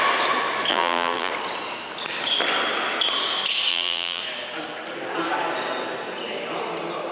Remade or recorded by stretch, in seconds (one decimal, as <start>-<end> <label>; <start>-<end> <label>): 0.0-0.7 recorded; 0.7-1.3 remade; 1.3-3.7 recorded; 3.7-4.2 remade; 4.2-7.1 recorded